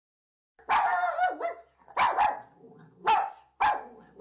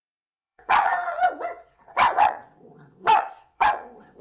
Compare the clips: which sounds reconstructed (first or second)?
second